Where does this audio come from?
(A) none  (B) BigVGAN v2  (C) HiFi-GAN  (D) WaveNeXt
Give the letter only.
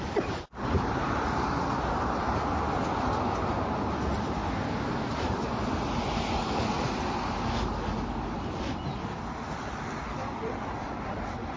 A